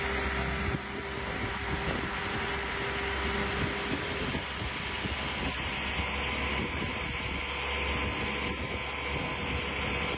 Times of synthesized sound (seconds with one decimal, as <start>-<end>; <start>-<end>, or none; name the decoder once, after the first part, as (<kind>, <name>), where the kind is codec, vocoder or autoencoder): none